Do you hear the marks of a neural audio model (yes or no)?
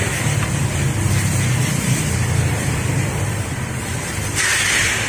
yes